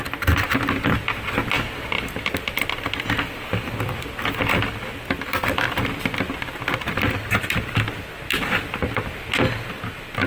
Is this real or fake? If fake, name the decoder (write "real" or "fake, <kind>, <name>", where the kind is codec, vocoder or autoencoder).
real